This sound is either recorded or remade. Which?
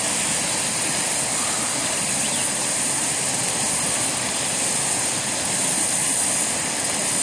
recorded